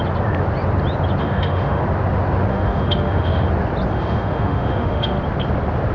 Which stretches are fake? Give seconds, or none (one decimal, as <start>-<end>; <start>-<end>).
1.2-1.8; 2.5-3.5; 3.9-5.2